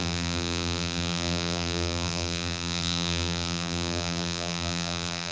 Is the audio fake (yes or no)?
yes